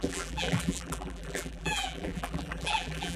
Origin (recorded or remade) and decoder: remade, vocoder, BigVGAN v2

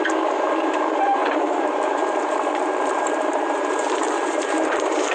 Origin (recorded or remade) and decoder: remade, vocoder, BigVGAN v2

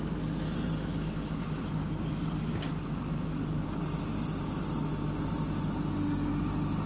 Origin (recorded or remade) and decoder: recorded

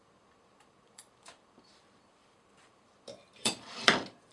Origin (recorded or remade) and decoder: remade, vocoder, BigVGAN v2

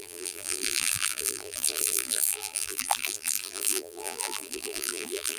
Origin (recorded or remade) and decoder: remade, vocoder, BigVGAN v2